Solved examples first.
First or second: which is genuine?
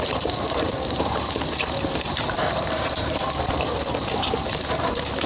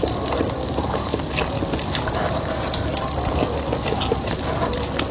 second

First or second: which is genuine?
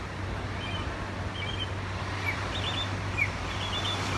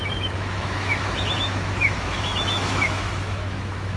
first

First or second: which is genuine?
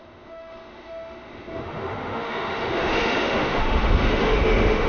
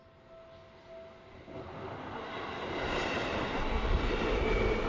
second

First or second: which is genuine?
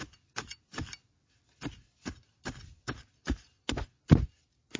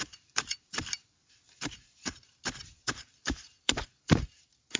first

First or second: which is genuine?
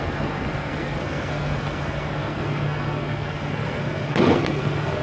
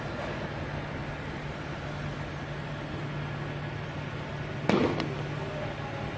second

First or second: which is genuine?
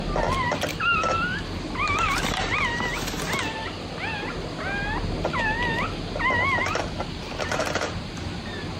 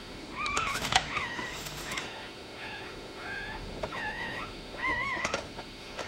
first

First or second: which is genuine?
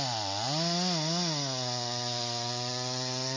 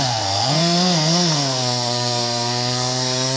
first